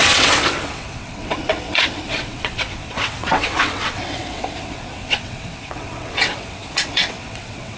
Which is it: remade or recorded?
remade